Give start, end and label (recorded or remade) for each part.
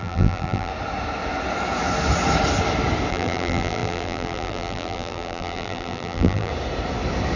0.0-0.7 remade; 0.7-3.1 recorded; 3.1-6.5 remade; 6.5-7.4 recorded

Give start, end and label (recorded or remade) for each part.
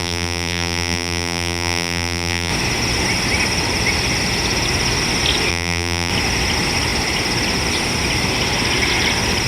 0.0-2.5 remade; 2.5-5.5 recorded; 5.5-6.1 remade; 6.1-9.5 recorded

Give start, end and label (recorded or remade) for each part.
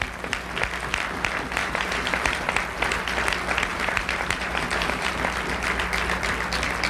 0.0-1.6 recorded; 1.6-2.5 remade; 2.5-3.7 recorded; 3.7-5.1 remade; 5.1-6.9 recorded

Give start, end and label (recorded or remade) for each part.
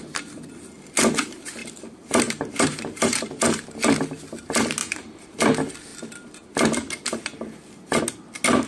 0.0-1.6 recorded; 1.6-3.4 remade; 3.4-4.8 recorded; 4.8-5.4 remade; 5.4-8.7 recorded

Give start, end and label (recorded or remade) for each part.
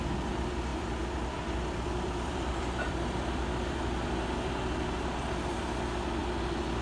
0.0-0.7 recorded; 0.7-3.8 remade; 3.8-6.8 recorded